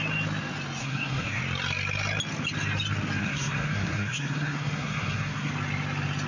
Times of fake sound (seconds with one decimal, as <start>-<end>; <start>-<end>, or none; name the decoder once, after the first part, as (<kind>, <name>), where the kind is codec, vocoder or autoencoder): 0.8-1.4 (codec, SNAC); 3.2-5.5